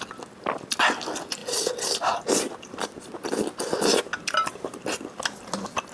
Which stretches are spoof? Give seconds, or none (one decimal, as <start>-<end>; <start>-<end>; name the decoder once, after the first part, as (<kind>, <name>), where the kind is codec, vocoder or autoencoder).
none